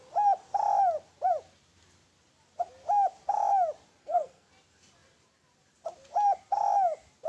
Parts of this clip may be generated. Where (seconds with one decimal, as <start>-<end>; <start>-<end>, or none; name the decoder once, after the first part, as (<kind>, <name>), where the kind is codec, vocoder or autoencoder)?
4.0-4.5 (codec, SNAC)